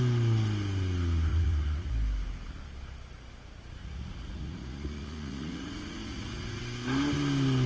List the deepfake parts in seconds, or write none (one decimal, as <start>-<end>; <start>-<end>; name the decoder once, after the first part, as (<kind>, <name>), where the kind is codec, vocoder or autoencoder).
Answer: 1.3-1.9 (vocoder, Vocos); 3.8-6.6